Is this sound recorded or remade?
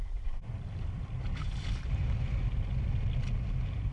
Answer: recorded